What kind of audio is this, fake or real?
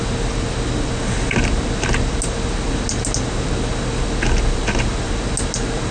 real